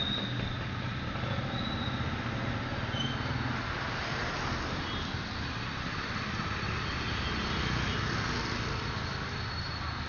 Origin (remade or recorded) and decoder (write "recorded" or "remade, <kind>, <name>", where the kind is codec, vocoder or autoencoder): recorded